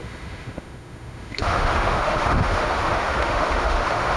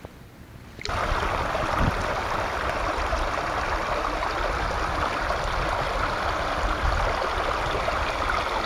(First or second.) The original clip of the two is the second